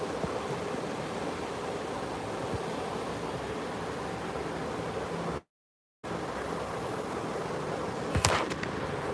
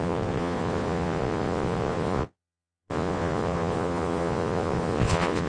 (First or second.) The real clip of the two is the first